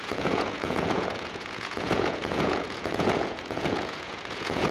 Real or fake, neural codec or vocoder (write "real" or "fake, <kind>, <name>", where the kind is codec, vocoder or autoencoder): fake, vocoder, Vocos